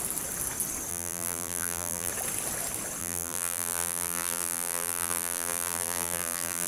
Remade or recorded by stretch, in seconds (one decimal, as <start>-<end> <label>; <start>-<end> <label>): 0.0-0.9 recorded; 0.9-2.1 remade; 2.1-3.0 recorded; 3.0-6.7 remade

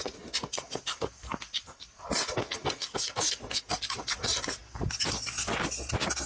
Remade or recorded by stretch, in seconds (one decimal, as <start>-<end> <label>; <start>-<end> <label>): 0.0-6.3 recorded